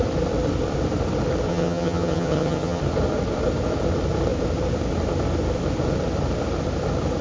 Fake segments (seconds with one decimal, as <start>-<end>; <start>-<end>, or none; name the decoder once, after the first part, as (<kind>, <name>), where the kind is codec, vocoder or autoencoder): 1.5-2.8 (vocoder, HiFi-GAN)